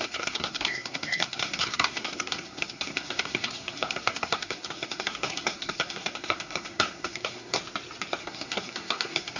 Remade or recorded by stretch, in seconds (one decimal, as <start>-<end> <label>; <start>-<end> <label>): 0.0-7.6 remade; 7.6-8.2 recorded; 8.2-9.4 remade